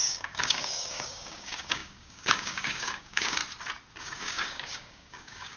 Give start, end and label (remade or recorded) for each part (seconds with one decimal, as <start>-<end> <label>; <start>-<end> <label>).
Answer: 0.0-3.4 remade; 3.4-4.0 recorded; 4.0-5.6 remade